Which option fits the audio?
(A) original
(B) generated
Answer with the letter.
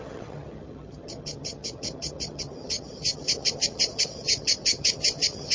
B